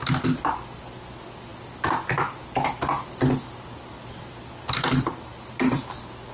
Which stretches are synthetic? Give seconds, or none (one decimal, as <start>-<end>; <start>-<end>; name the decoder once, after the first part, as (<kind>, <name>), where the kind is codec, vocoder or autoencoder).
none